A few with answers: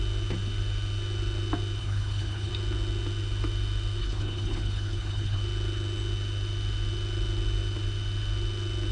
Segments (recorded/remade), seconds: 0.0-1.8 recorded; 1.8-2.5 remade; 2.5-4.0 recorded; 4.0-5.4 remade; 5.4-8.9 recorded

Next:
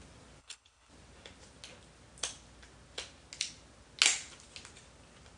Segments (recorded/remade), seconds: 0.0-0.4 recorded; 0.4-0.9 remade; 0.9-5.4 recorded

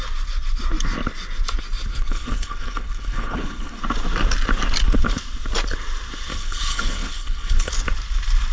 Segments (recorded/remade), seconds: 0.0-1.9 recorded; 1.9-3.8 remade; 3.8-6.3 recorded; 6.3-7.7 remade; 7.7-8.5 recorded